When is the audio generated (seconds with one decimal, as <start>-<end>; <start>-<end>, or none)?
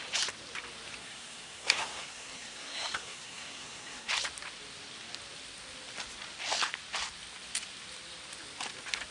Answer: 1.0-4.1